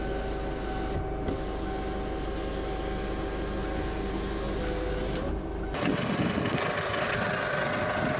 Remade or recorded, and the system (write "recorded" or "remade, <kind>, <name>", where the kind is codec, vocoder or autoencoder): recorded